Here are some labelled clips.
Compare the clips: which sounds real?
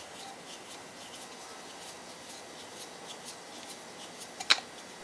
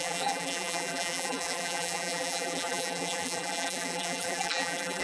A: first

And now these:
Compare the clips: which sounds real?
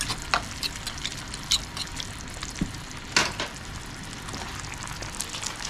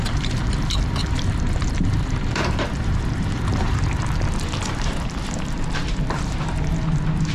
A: first